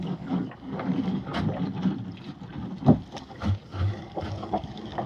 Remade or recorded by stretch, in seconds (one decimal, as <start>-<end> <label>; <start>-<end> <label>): 0.0-1.3 remade; 1.3-3.2 recorded; 3.2-5.1 remade